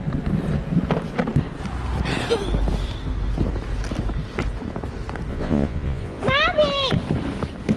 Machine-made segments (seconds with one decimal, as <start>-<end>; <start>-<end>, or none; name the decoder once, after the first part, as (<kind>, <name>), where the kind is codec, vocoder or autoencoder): 5.3-6.2 (vocoder, Vocos)